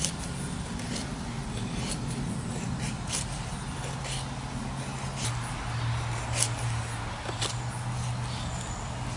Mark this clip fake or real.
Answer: real